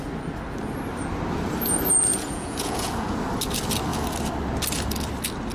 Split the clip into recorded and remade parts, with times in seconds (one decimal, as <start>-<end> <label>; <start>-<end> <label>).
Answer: 0.0-2.1 recorded; 2.1-3.2 remade; 3.2-5.5 recorded